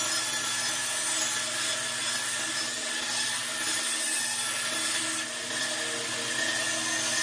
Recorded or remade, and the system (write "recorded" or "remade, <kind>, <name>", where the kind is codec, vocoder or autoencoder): recorded